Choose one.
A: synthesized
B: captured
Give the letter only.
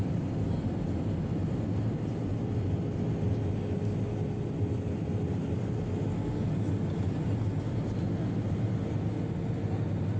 B